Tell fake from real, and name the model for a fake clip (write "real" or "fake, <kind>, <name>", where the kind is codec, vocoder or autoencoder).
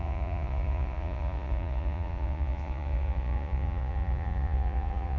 fake, vocoder, Vocos